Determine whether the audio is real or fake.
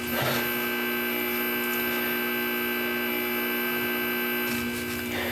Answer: real